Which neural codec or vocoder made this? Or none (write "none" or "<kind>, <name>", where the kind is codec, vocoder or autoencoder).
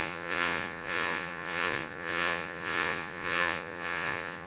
vocoder, Vocos